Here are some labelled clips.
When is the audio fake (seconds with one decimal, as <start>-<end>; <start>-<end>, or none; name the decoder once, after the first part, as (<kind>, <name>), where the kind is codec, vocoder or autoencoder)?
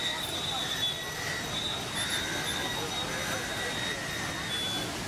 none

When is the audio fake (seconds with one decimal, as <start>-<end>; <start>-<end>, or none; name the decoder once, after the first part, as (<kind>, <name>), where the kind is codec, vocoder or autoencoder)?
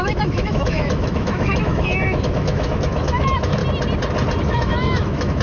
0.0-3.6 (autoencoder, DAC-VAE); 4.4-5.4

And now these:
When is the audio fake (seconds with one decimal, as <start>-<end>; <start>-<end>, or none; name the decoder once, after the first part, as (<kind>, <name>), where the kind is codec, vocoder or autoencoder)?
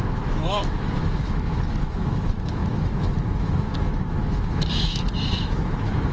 0.0-6.1 (autoencoder, DAC-VAE)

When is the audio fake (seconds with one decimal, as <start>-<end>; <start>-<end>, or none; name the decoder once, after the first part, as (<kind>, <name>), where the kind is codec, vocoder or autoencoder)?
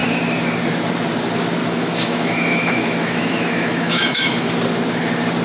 1.6-4.5 (autoencoder, DAC-VAE)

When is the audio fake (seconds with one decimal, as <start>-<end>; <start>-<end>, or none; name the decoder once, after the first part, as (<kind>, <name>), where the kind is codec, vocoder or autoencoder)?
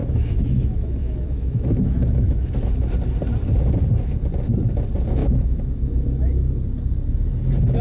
0.0-2.6 (autoencoder, DAC-VAE); 5.2-6.5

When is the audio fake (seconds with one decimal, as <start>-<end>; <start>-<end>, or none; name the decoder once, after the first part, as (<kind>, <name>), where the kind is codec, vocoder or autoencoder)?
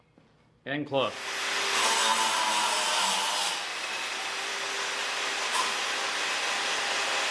none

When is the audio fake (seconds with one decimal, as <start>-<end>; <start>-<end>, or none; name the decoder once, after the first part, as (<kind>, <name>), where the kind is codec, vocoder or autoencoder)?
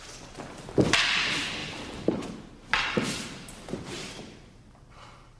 none